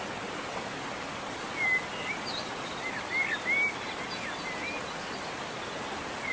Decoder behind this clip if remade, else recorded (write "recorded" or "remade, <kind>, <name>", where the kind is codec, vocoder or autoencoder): recorded